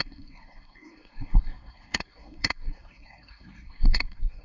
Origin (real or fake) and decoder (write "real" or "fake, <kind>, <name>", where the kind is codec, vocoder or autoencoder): fake, codec, SNAC